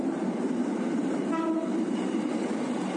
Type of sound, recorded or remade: remade